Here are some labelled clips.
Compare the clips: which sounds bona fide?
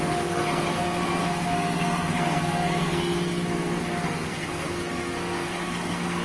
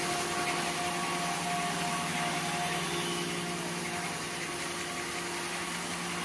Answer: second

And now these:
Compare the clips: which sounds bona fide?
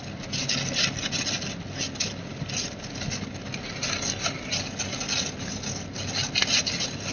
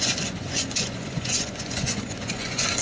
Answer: first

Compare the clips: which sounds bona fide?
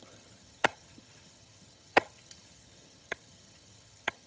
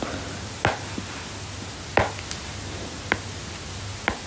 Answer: second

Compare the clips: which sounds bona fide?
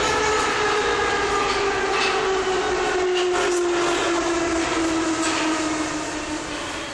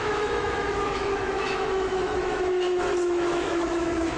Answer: first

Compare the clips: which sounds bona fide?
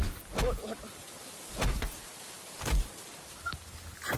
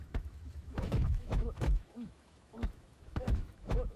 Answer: first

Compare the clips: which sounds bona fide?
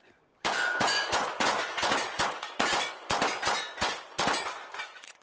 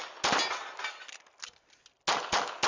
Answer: second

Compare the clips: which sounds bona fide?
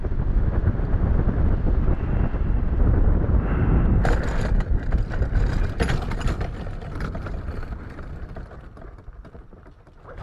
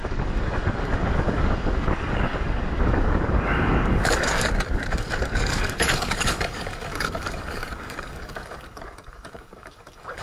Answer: first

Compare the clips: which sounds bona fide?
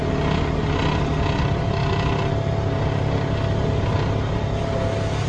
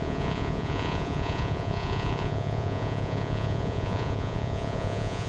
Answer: first